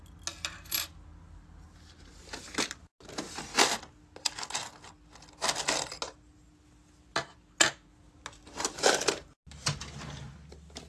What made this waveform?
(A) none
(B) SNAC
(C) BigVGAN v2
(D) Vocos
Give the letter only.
A